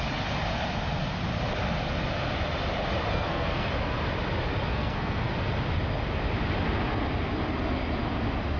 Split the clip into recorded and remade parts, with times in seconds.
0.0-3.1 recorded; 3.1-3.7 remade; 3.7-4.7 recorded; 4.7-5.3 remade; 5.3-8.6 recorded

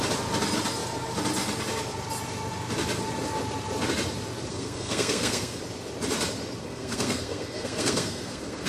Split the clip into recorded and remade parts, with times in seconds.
0.0-4.5 recorded; 4.5-5.6 remade; 5.6-6.6 recorded; 6.6-8.7 remade

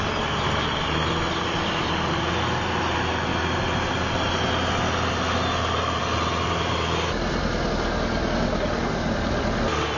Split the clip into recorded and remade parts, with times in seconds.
0.0-10.0 recorded

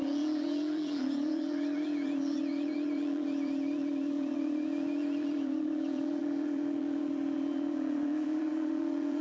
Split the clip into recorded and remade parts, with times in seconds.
0.0-9.2 remade